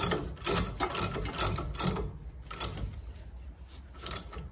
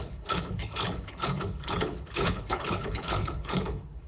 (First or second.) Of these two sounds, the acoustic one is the first